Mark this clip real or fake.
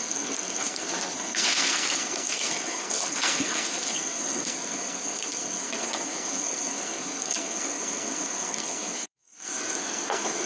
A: fake